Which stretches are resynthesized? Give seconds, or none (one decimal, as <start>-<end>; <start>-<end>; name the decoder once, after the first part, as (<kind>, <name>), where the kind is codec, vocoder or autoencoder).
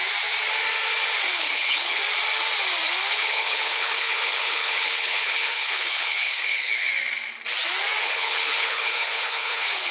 1.4-2.0 (codec, HILCodec); 3.1-6.9; 8.0-9.9